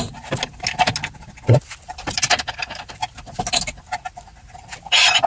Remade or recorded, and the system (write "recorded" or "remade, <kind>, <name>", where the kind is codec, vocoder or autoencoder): recorded